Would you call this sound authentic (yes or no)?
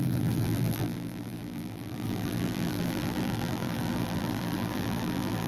no